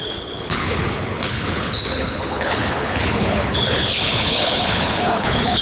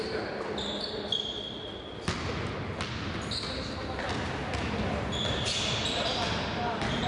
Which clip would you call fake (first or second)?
first